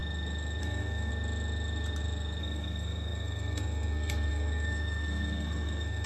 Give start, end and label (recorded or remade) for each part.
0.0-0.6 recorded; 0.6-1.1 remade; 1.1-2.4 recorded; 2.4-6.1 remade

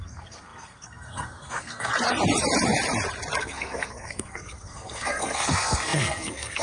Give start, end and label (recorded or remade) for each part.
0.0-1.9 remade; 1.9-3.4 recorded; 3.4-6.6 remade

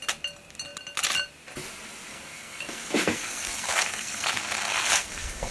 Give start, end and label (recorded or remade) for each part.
0.0-2.1 recorded; 2.1-5.5 remade

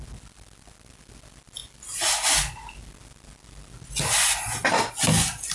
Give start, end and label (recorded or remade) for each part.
0.0-5.5 recorded

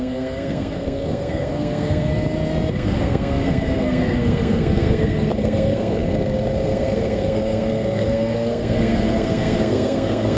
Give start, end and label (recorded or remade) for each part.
0.0-2.1 remade; 2.1-2.7 recorded; 2.7-10.4 remade

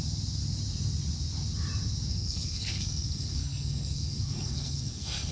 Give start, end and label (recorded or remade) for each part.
0.0-2.1 recorded; 2.1-5.3 remade